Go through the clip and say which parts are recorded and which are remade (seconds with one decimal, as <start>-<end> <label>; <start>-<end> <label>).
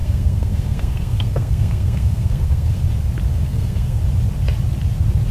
0.0-2.8 remade; 2.8-3.3 recorded; 3.3-4.0 remade; 4.0-5.3 recorded